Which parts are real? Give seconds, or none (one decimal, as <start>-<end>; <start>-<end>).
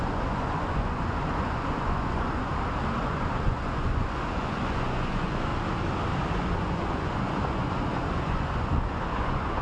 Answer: 2.5-3.0; 5.5-6.3